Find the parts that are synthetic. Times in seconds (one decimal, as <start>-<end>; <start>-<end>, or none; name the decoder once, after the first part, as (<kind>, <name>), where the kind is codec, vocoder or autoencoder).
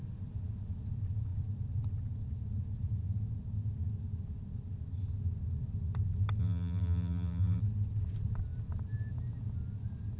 6.4-7.6 (vocoder, BigVGAN v2)